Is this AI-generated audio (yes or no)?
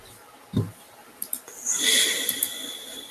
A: no